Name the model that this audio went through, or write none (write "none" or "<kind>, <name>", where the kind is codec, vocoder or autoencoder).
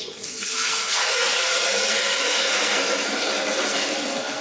codec, SNAC